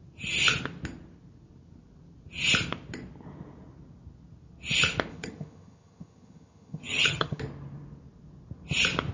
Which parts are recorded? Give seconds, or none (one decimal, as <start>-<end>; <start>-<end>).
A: 0.0-5.1; 7.4-9.1